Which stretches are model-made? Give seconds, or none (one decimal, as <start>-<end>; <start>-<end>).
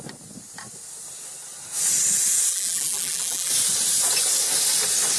2.5-3.5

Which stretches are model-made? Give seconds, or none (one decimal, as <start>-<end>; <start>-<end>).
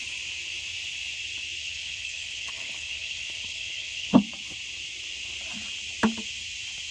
1.6-4.2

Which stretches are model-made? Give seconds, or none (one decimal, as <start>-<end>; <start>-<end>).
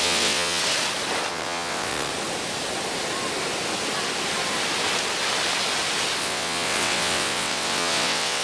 0.0-0.6; 1.3-2.1; 6.2-8.4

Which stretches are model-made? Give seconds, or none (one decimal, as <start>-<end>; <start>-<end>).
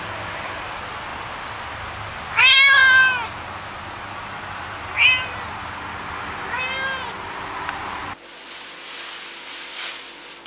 none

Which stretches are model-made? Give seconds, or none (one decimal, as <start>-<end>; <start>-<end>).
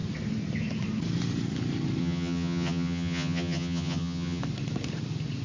2.0-4.4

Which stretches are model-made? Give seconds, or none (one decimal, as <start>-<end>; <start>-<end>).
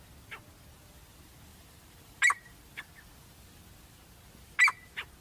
1.5-2.8